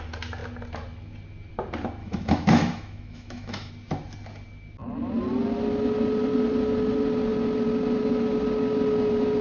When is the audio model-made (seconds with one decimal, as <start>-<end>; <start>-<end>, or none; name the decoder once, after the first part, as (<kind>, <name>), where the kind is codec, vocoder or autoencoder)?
2.0-3.7 (autoencoder, DAC-VAE)